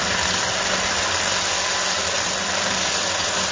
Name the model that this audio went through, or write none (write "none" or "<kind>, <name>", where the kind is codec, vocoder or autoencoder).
none